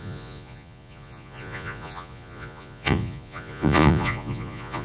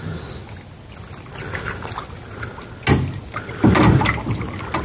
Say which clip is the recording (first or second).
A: second